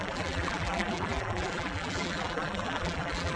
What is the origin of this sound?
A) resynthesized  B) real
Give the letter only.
A